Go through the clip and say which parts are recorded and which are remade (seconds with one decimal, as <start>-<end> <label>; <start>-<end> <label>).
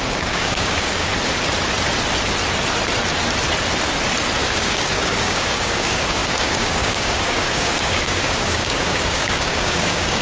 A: 0.0-1.1 remade; 1.1-4.4 recorded; 4.4-10.2 remade